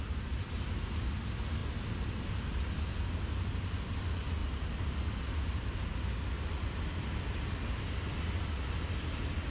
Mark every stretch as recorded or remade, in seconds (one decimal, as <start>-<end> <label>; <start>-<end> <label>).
0.0-1.6 recorded; 1.6-2.3 remade; 2.3-9.5 recorded